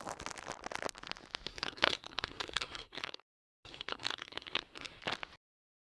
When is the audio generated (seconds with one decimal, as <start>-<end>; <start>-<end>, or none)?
1.5-5.0